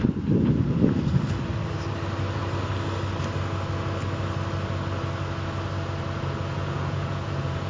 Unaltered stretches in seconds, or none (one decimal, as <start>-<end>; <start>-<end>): 0.0-6.6